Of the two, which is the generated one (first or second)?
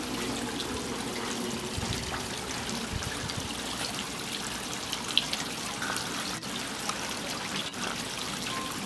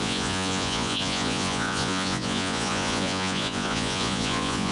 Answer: second